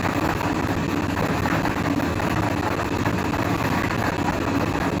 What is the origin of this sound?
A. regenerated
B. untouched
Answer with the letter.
B